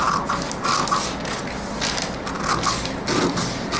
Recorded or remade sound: recorded